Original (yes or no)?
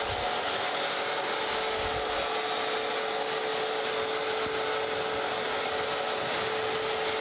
yes